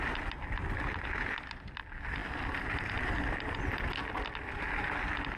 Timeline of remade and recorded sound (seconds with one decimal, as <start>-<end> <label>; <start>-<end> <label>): 0.0-5.4 recorded